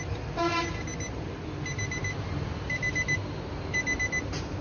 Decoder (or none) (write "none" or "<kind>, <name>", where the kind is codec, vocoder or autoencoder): none